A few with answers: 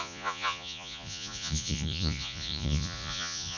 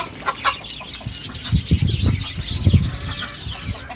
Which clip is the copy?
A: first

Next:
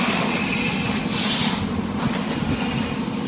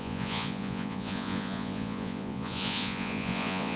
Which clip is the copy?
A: second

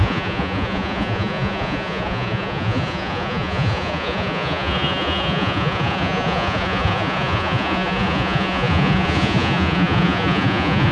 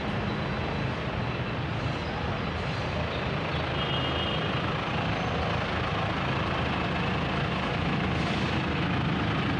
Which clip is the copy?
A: first